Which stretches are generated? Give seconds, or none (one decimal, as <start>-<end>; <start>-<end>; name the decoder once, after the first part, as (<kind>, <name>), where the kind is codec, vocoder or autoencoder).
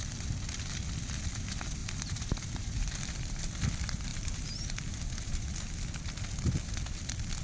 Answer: 1.8-3.5 (vocoder, BigVGAN v2); 4.1-5.5